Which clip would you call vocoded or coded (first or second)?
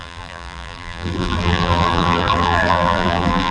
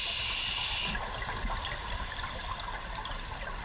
first